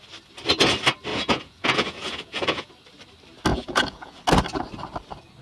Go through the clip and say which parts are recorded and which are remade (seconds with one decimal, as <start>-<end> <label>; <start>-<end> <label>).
0.0-1.1 recorded; 1.1-2.7 remade; 2.7-3.5 recorded; 3.5-4.2 remade; 4.2-5.4 recorded